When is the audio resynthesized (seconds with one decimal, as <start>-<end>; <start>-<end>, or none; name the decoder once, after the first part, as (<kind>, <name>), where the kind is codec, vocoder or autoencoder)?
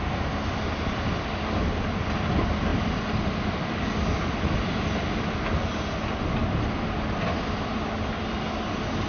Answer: none